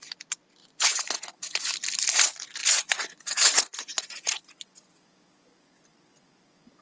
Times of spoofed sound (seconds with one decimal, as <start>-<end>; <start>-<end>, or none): 0.6-1.7; 2.6-6.8